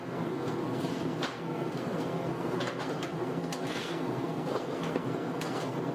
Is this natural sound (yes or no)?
no